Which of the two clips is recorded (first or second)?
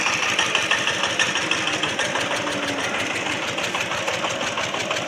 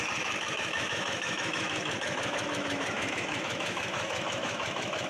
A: first